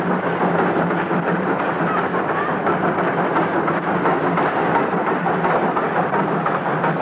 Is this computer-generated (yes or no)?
no